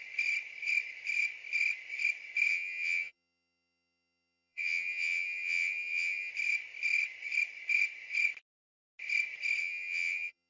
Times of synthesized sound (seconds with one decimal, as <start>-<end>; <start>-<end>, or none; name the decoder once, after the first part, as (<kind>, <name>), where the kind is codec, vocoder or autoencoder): 2.5-6.3 (vocoder, HiFi-GAN); 9.6-10.5

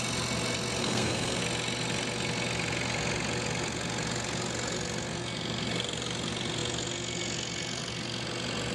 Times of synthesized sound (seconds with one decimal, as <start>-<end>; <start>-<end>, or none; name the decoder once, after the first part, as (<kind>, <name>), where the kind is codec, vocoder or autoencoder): 0.8-1.4 (codec, SNAC)

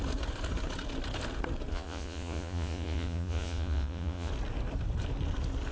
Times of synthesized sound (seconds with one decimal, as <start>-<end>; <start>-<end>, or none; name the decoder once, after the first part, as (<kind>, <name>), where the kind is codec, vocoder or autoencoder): 1.7-4.3 (vocoder, Vocos)

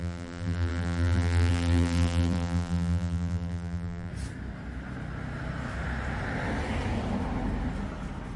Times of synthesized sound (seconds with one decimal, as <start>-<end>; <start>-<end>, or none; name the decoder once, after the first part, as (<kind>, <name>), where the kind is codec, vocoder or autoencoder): 0.0-4.1 (vocoder, BigVGAN v2)

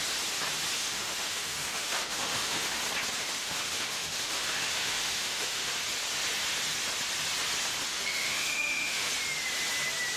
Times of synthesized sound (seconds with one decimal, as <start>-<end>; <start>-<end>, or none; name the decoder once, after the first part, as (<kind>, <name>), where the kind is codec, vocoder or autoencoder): 0.8-2.8 (autoencoder, DAC-VAE); 3.2-5.7; 7.9-9.1